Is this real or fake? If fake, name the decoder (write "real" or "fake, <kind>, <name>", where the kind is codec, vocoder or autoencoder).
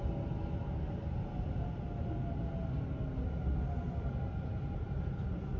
real